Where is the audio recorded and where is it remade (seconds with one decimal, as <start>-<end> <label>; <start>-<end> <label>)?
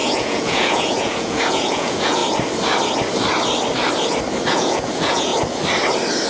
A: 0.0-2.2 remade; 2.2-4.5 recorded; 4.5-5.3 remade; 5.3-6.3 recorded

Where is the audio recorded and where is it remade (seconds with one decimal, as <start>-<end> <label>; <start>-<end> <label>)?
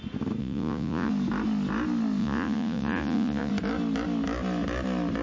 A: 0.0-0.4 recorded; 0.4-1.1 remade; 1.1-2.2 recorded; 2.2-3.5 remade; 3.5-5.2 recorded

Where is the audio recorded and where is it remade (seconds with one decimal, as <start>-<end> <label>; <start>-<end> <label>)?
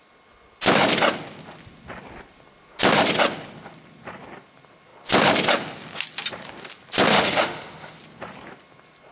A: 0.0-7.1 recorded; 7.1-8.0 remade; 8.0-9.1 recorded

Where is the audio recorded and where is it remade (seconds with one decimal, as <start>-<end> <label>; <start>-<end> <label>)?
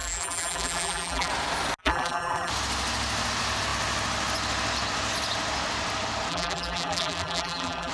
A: 0.0-1.3 remade; 1.3-1.8 recorded; 1.8-2.5 remade; 2.5-6.3 recorded; 6.3-7.9 remade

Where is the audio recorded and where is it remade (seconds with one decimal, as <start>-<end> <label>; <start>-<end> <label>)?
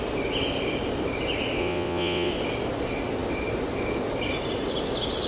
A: 0.0-1.6 recorded; 1.6-2.3 remade; 2.3-5.3 recorded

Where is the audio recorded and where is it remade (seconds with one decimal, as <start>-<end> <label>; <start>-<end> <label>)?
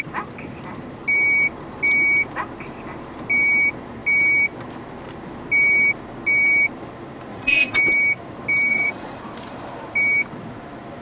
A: 0.0-7.3 recorded; 7.3-7.8 remade; 7.8-8.7 recorded; 8.7-9.2 remade; 9.2-11.0 recorded